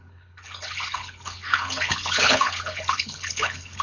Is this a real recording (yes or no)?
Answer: no